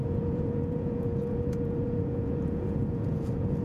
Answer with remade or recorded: remade